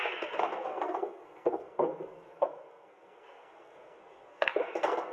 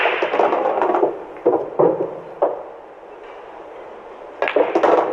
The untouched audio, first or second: second